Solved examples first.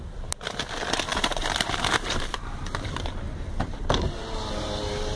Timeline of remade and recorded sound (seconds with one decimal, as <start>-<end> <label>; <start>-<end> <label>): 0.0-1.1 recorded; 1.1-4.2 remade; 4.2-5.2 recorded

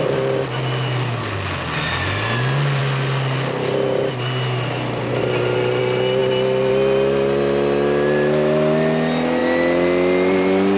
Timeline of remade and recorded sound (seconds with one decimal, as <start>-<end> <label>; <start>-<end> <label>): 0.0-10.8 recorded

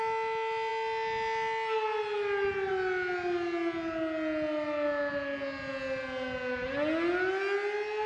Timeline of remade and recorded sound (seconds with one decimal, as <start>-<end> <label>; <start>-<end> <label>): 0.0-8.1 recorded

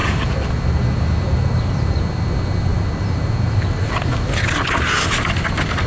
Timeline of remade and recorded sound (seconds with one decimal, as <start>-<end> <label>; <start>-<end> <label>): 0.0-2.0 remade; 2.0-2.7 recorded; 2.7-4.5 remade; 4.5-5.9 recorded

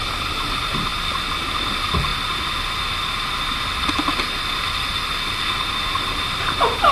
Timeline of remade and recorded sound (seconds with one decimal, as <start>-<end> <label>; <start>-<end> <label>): 0.0-6.9 recorded

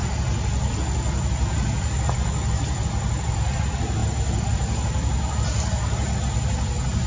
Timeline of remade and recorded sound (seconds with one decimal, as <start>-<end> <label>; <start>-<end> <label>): 0.0-7.1 recorded